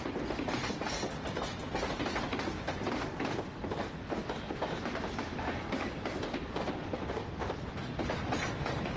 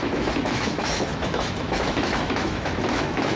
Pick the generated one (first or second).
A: second